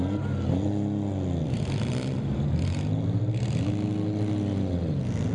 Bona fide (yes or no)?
yes